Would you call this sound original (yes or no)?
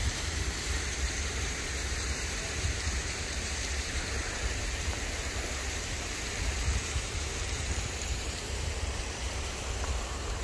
no